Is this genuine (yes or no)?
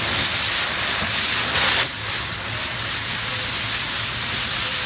yes